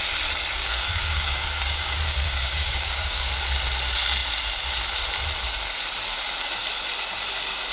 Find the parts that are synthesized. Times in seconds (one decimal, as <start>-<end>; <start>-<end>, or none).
0.6-3.3